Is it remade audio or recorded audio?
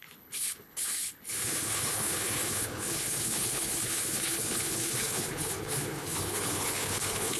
remade